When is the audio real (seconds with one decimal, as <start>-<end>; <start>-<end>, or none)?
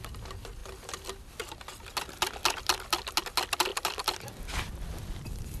0.0-5.6